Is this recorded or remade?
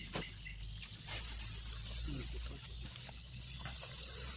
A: recorded